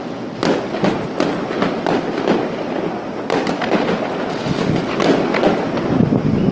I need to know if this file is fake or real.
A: real